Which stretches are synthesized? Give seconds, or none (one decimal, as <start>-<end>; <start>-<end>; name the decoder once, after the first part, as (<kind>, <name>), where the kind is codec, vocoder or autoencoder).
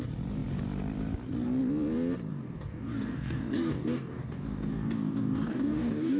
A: 2.3-6.2 (codec, DAC)